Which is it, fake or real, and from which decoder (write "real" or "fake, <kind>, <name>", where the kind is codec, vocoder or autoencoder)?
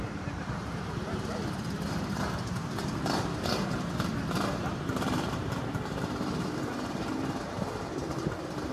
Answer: fake, vocoder, BigVGAN v2